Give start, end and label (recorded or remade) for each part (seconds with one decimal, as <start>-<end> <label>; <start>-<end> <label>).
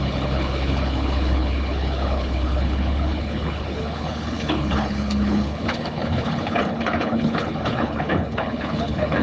0.0-9.2 remade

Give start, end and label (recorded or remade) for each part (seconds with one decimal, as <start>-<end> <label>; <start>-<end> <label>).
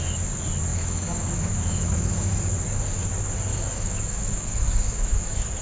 0.0-0.7 recorded; 0.7-2.4 remade; 2.4-3.5 recorded; 3.5-5.6 remade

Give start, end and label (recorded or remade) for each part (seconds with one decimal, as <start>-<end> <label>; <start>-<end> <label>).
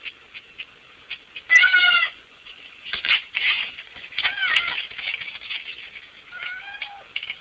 0.0-1.8 recorded; 1.8-4.3 remade; 4.3-7.4 recorded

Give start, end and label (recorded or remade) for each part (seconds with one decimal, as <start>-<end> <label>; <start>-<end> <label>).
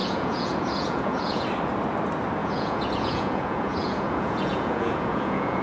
0.0-1.5 remade; 1.5-2.4 recorded; 2.4-5.6 remade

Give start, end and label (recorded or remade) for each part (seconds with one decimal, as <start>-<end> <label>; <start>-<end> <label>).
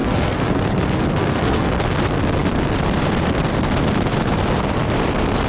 0.0-0.6 remade; 0.6-1.2 recorded; 1.2-1.7 remade; 1.7-5.5 recorded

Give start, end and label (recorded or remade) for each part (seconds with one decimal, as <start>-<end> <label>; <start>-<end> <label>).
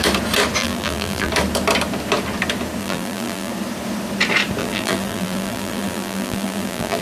0.0-0.6 recorded; 0.6-1.3 remade; 1.3-2.8 recorded; 2.8-3.5 remade; 3.5-4.6 recorded; 4.6-7.0 remade